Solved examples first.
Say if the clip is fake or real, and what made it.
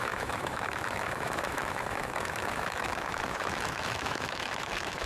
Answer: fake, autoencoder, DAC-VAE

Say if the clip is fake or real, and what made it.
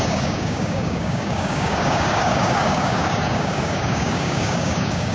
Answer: fake, codec, DAC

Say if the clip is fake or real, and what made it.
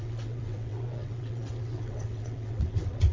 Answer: fake, vocoder, WaveNeXt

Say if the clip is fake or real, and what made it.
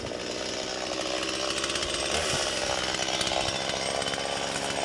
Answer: real